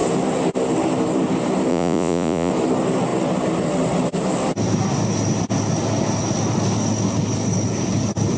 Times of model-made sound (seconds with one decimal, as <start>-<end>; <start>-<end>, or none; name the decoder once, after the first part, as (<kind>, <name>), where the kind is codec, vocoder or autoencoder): 1.7-2.5 (vocoder, Vocos)